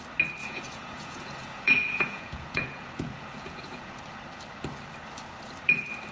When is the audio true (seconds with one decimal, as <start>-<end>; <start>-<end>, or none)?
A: 0.0-0.4; 4.1-6.1